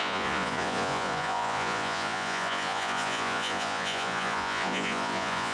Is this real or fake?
fake